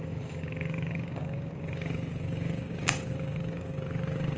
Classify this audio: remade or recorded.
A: remade